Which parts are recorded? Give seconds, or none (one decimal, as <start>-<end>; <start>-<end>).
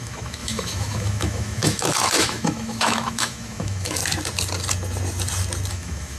4.0-5.7